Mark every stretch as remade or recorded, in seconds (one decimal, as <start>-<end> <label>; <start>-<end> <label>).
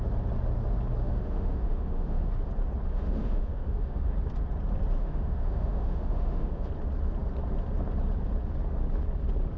0.0-1.0 recorded; 1.0-2.3 remade; 2.3-2.9 recorded; 2.9-4.1 remade; 4.1-5.0 recorded; 5.0-6.7 remade; 6.7-9.6 recorded